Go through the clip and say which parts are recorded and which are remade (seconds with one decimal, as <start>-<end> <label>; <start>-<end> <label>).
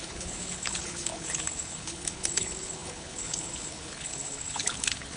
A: 0.0-5.2 remade